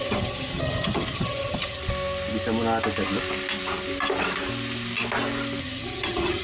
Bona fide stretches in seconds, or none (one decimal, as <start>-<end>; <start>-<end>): 1.8-5.6